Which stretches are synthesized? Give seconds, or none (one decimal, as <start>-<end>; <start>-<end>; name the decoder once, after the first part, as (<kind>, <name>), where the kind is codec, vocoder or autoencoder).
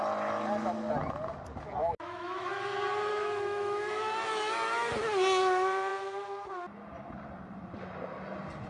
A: 1.8-2.5 (autoencoder, DAC-VAE); 3.1-4.9